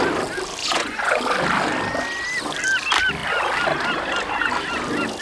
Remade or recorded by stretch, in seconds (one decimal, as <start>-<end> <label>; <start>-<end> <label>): 0.0-0.6 recorded; 0.6-1.2 remade; 1.2-5.2 recorded